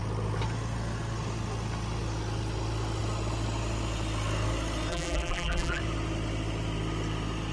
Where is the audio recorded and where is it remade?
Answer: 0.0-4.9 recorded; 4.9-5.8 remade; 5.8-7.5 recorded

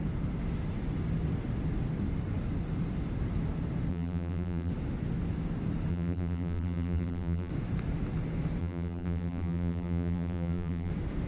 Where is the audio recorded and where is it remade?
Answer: 0.0-3.9 recorded; 3.9-4.7 remade; 4.7-5.9 recorded; 5.9-7.5 remade; 7.5-8.6 recorded; 8.6-10.9 remade; 10.9-11.3 recorded

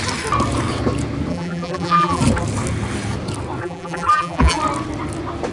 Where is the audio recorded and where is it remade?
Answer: 0.0-1.3 recorded; 1.3-2.2 remade; 2.2-3.6 recorded; 3.6-4.6 remade; 4.6-5.5 recorded

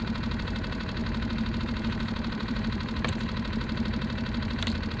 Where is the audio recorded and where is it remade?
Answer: 0.0-5.0 remade

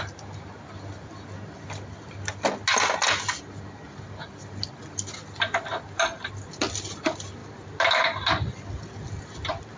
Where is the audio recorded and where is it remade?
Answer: 0.0-9.8 recorded

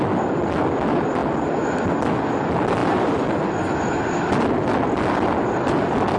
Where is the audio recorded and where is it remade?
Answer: 0.0-6.2 recorded

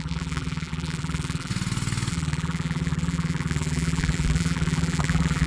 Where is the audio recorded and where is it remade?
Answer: 0.0-1.5 remade; 1.5-2.1 recorded; 2.1-5.5 remade